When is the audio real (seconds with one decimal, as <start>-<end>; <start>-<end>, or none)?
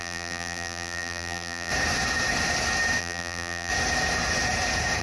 1.7-3.0; 3.7-5.0